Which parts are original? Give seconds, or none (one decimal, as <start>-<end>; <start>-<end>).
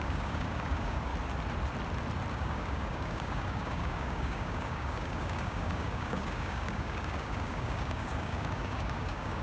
1.1-2.3